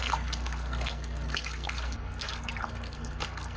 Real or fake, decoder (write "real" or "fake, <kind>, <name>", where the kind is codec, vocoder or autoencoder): fake, codec, SNAC